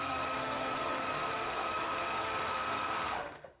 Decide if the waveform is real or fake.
fake